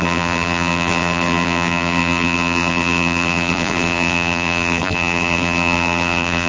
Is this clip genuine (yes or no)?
no